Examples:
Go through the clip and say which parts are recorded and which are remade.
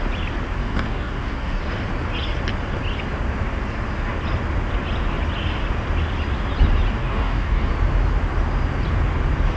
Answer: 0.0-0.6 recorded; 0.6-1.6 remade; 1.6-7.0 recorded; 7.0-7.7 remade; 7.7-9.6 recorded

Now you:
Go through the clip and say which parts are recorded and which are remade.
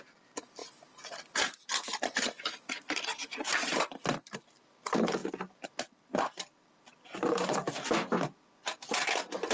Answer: 0.0-9.5 recorded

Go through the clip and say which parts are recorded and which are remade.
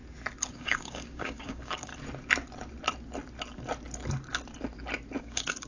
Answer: 0.0-0.5 recorded; 0.5-1.9 remade; 1.9-5.2 recorded; 5.2-5.7 remade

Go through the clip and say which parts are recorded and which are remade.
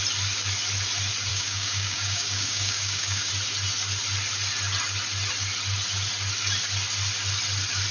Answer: 0.0-1.3 recorded; 1.3-3.3 remade; 3.3-7.9 recorded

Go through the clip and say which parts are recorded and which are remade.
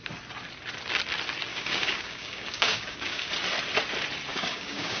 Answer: 0.0-1.5 recorded; 1.5-3.3 remade; 3.3-4.3 recorded; 4.3-5.0 remade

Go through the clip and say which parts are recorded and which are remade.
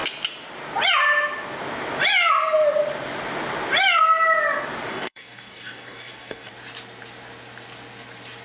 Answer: 0.0-4.9 recorded; 4.9-6.5 remade; 6.5-8.4 recorded